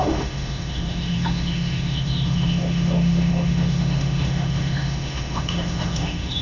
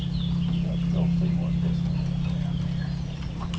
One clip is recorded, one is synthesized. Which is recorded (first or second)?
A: second